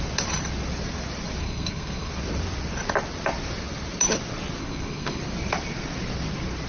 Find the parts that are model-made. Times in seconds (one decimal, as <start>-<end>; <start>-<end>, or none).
1.4-2.1; 4.6-5.2